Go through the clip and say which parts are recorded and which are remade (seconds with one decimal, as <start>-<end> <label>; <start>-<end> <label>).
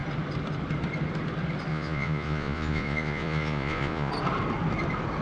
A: 0.0-1.7 recorded; 1.7-4.1 remade; 4.1-5.2 recorded